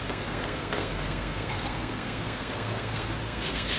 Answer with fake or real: fake